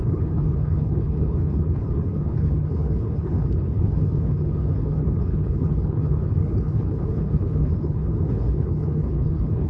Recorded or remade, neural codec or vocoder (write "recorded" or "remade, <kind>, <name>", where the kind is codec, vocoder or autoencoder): remade, codec, HILCodec